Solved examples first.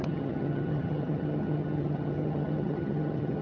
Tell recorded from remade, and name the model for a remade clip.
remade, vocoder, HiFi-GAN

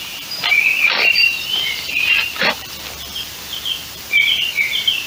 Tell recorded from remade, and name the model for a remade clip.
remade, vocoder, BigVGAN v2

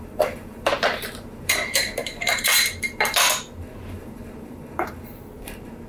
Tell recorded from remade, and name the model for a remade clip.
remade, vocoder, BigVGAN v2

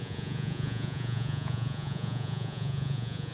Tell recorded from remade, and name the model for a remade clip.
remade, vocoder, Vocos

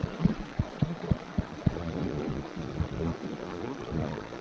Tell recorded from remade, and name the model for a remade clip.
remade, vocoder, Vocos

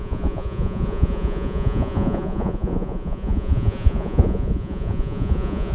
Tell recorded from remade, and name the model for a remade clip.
remade, vocoder, Vocos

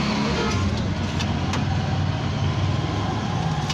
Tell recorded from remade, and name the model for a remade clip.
recorded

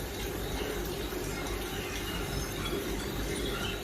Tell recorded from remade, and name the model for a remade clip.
recorded